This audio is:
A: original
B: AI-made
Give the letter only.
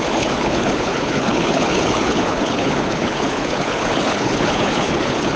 B